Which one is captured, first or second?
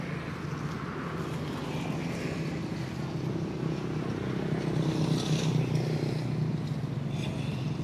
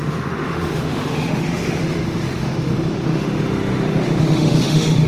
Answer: first